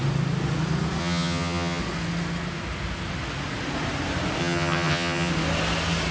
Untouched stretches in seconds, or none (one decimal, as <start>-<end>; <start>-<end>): 0.0-1.0; 1.8-4.4; 5.3-6.1